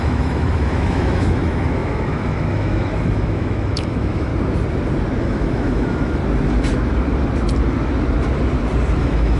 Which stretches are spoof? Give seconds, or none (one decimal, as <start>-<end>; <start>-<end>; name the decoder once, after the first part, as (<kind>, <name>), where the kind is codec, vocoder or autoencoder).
0.0-4.3 (autoencoder, DAC-VAE); 5.2-6.2; 9.0-9.4

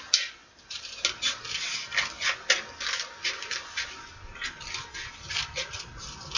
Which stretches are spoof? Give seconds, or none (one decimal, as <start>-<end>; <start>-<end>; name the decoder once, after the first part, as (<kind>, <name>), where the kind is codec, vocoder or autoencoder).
0.4-1.0 (vocoder, BigVGAN v2)